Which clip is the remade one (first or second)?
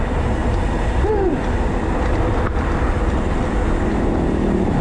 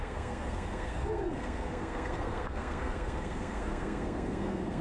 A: second